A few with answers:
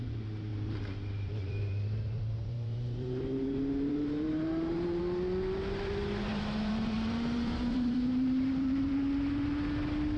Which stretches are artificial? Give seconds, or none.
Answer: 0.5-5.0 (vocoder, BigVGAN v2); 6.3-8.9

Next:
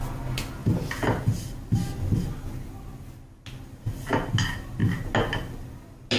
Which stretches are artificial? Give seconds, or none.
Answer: none

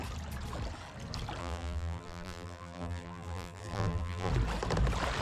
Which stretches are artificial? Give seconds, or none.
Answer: 1.4-4.3 (vocoder, BigVGAN v2)

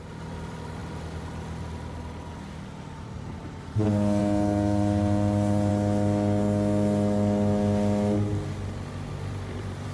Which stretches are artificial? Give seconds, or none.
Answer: 0.0-0.8 (vocoder, BigVGAN v2); 4.2-5.7; 9.1-9.9

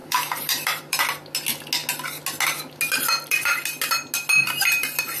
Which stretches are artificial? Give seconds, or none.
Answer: 0.0-1.0 (vocoder, BigVGAN v2)

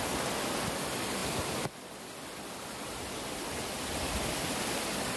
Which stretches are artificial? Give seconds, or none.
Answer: none

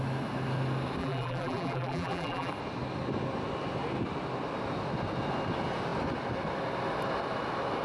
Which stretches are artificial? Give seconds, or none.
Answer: 1.0-2.5 (vocoder, BigVGAN v2)